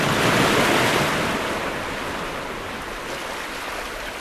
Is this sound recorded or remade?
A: recorded